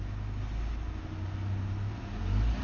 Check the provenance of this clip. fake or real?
real